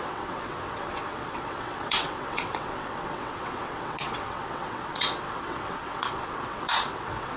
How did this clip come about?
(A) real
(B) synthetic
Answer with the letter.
B